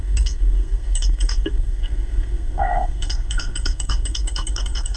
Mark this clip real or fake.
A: fake